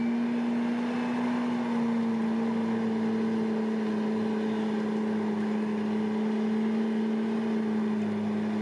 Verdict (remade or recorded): recorded